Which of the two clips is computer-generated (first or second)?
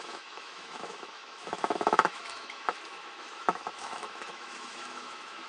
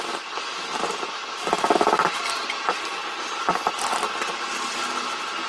first